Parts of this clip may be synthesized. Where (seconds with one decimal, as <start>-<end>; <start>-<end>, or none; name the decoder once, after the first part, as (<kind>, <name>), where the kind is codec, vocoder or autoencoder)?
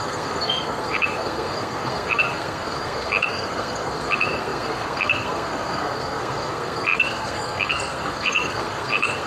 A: 0.0-9.3 (codec, SNAC)